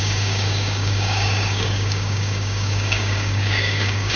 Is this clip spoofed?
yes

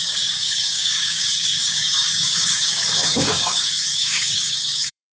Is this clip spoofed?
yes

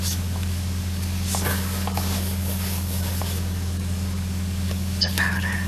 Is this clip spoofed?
yes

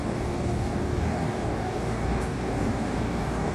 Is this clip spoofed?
yes